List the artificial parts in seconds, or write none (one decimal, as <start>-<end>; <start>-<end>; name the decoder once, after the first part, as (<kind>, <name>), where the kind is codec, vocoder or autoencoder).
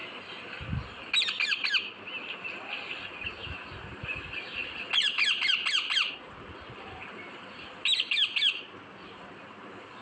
4.6-10.0 (vocoder, BigVGAN v2)